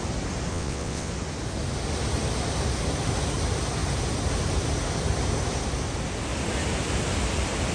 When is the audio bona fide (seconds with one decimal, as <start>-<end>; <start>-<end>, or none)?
0.0-0.5; 1.1-7.7